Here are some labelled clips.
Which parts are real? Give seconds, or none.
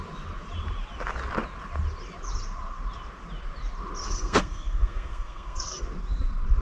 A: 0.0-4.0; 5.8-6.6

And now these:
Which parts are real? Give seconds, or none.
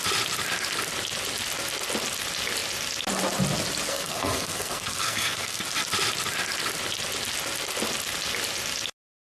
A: 0.0-3.9; 5.6-9.3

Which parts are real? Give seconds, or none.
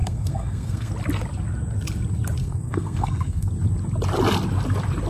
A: 0.9-2.4; 3.5-5.1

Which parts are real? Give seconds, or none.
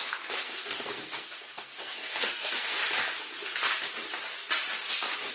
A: 2.8-5.3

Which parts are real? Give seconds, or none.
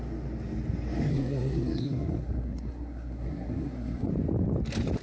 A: 0.0-1.1; 4.1-5.0